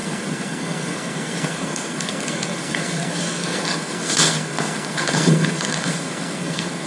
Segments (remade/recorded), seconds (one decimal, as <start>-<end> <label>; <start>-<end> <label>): 0.0-6.9 remade